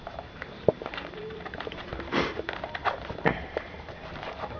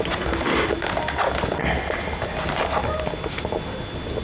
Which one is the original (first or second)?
second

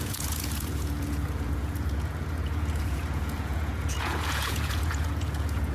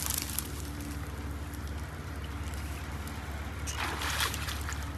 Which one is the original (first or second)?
second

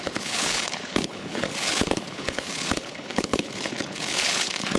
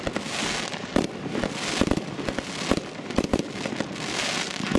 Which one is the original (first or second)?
second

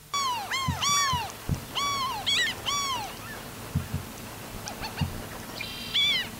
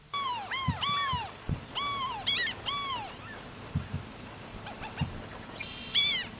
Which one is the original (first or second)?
first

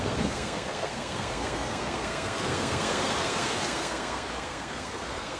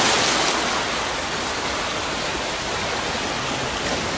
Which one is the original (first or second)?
second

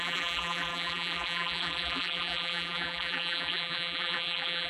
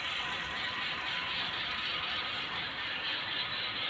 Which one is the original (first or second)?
second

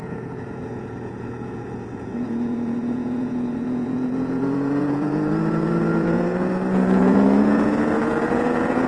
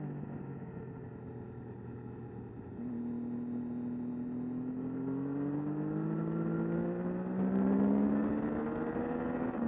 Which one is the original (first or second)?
second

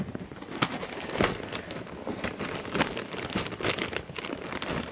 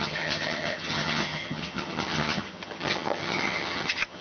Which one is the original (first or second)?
first